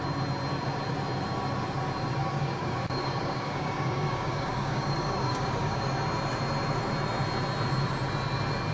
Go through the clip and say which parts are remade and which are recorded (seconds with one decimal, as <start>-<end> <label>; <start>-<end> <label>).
0.0-2.2 recorded; 2.2-5.9 remade; 5.9-8.7 recorded